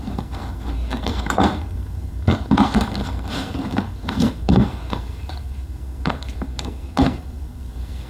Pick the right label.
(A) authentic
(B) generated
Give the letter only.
B